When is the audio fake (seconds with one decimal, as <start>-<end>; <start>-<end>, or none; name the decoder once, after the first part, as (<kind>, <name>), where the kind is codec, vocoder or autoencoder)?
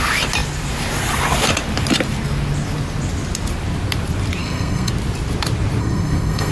4.4-4.9 (codec, SNAC); 5.8-6.5